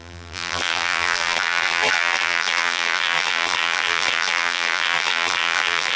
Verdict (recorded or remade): remade